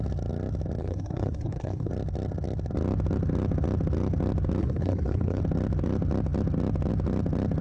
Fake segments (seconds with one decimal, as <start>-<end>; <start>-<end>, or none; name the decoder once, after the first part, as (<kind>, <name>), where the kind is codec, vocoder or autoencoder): 0.8-1.9 (codec, SNAC); 4.6-5.4